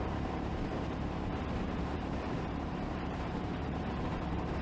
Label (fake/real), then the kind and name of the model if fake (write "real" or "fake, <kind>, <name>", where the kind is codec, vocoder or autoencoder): fake, vocoder, BigVGAN v2